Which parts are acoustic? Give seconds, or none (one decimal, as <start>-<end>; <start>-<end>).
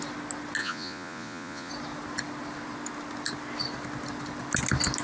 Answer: 0.0-0.6; 1.7-5.0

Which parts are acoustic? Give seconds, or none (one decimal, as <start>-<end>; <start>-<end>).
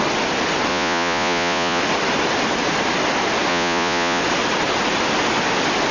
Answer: 0.0-0.7; 1.8-3.5; 4.2-5.9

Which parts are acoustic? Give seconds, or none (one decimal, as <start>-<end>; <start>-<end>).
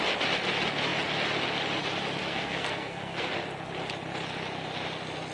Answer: 0.0-2.2; 3.3-5.3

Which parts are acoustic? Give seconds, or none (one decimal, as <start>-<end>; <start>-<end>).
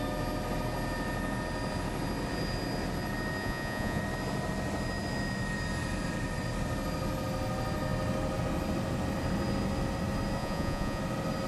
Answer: 0.0-3.4; 4.0-10.4; 11.0-11.5